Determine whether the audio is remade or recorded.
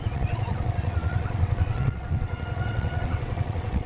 remade